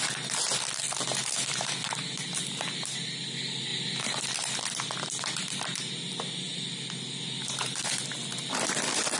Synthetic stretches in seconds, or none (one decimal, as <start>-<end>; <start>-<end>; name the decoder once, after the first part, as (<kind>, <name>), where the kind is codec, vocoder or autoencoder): none